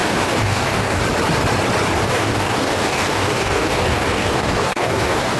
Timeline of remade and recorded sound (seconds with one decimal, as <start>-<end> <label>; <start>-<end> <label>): 0.0-1.0 remade; 1.0-2.0 recorded; 2.0-5.4 remade

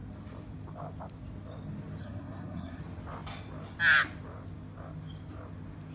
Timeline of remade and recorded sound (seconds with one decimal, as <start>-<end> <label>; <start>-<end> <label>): 0.0-2.0 recorded; 2.0-2.8 remade; 2.8-5.9 recorded